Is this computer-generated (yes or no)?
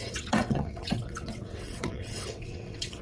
yes